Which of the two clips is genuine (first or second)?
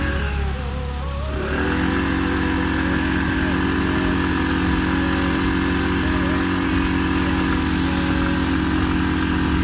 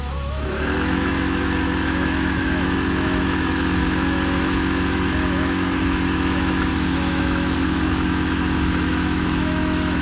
first